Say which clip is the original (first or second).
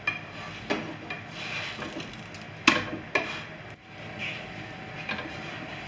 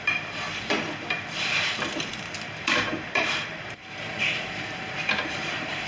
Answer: first